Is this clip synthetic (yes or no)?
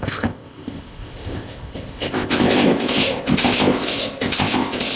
yes